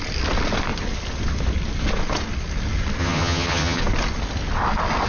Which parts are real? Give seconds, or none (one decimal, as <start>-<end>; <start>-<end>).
0.0-3.0; 3.8-5.1